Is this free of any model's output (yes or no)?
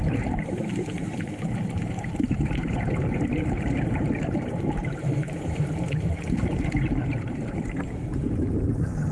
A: no